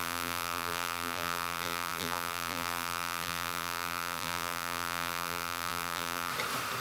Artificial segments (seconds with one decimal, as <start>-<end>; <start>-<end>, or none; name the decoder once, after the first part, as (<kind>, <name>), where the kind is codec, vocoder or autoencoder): 0.0-6.3 (vocoder, BigVGAN v2)